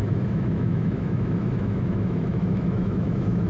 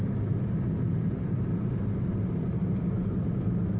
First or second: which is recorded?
second